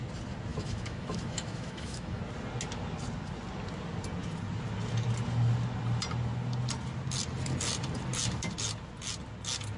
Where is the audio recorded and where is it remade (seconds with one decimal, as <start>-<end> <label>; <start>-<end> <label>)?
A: 0.0-0.5 recorded; 0.5-2.2 remade; 2.2-9.8 recorded